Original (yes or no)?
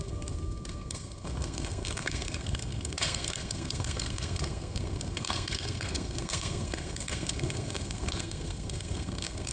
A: no